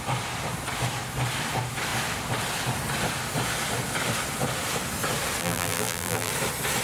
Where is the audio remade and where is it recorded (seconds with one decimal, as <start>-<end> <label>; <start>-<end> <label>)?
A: 0.0-5.4 recorded; 5.4-6.3 remade; 6.3-6.8 recorded